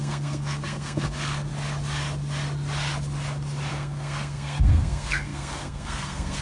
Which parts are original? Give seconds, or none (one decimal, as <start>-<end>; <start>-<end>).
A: 1.5-3.7